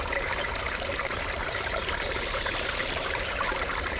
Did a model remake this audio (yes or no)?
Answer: yes